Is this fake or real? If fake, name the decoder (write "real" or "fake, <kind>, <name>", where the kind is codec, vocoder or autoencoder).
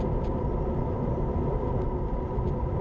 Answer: real